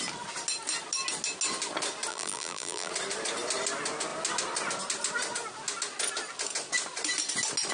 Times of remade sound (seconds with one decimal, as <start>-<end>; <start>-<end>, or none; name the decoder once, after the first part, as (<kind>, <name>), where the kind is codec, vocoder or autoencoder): 2.1-2.9 (vocoder, BigVGAN v2)